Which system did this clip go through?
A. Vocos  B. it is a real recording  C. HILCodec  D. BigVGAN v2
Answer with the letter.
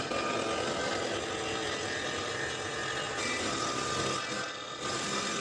B